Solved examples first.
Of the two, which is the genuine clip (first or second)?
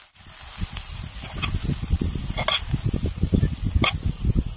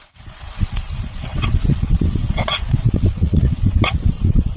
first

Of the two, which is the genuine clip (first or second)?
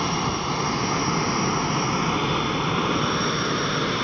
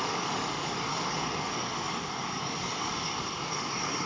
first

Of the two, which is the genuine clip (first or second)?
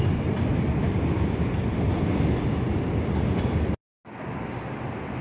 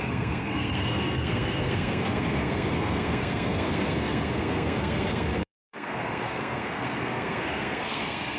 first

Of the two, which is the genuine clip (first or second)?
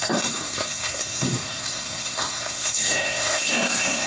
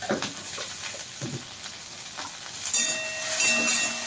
second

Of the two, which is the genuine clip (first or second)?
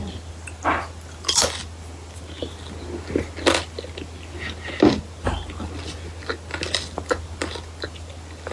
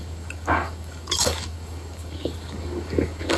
first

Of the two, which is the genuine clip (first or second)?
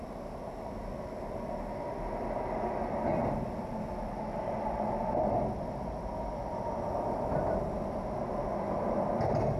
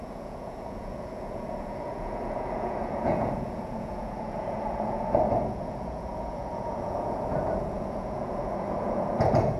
first